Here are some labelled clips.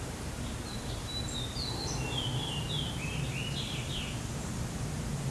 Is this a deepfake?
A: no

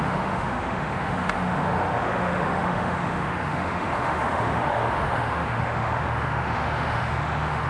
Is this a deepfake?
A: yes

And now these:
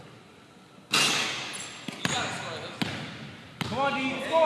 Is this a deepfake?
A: no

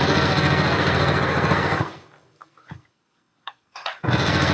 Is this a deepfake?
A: yes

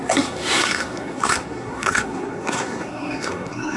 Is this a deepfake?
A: yes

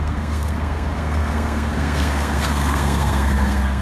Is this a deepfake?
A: yes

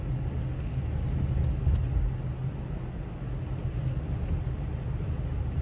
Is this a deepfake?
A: no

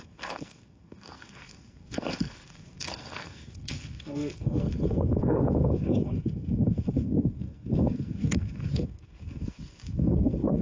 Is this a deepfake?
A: yes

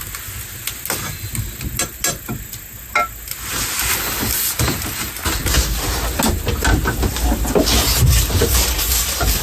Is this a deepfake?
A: no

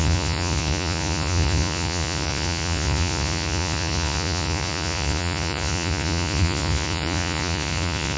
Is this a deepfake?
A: yes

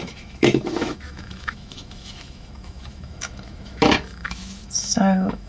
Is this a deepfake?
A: yes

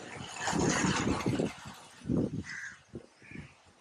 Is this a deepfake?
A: no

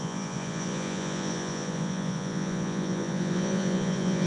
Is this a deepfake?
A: yes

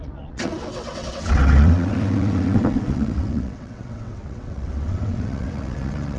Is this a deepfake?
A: yes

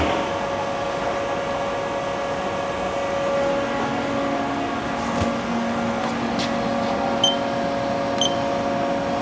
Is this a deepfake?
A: no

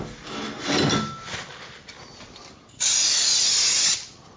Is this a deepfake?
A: no